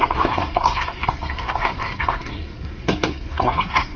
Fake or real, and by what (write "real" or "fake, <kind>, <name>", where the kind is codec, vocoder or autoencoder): fake, codec, SNAC